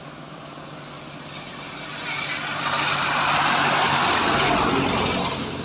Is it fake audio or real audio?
real